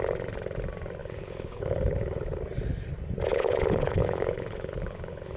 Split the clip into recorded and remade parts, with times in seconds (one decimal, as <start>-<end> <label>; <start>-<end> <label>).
0.0-1.0 recorded; 1.0-2.4 remade; 2.4-3.3 recorded; 3.3-5.4 remade